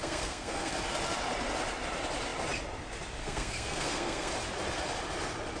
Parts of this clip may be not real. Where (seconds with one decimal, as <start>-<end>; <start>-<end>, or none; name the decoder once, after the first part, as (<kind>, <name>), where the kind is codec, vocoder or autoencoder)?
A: 0.0-0.7 (codec, SNAC); 3.2-4.3